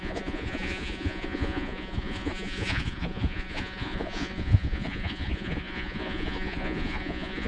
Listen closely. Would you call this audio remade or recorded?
remade